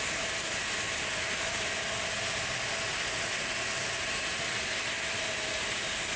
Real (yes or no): yes